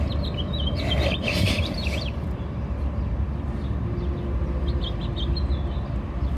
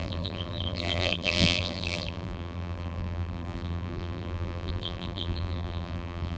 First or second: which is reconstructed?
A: second